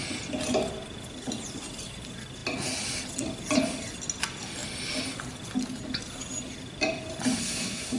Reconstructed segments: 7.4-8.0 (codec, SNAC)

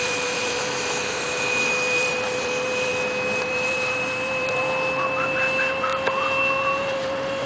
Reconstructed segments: 0.0-2.9 (vocoder, BigVGAN v2); 3.4-4.6; 5.2-5.9; 6.8-7.5

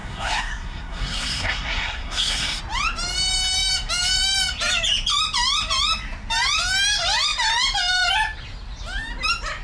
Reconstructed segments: 0.0-2.6 (codec, SNAC)

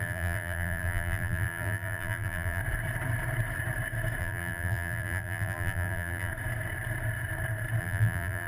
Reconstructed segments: 0.0-2.6 (vocoder, BigVGAN v2); 4.2-6.3; 7.8-8.5

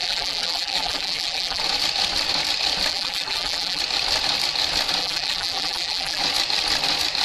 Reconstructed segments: 0.0-1.6 (vocoder, BigVGAN v2); 2.9-3.8; 5.0-6.2

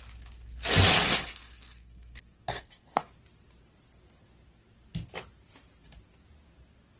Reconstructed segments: 1.3-3.1 (codec, SNAC)